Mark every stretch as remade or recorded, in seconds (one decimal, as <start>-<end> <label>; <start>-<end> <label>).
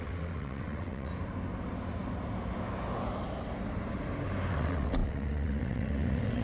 0.0-1.1 remade; 1.1-4.5 recorded; 4.5-6.4 remade